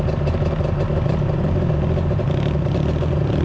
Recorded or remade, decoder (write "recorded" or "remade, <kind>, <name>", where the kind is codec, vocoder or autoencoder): recorded